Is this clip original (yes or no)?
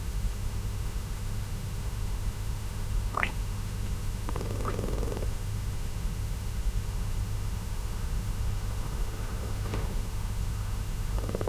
no